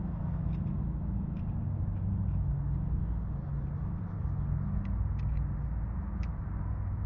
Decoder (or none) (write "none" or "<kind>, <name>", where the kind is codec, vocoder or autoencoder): none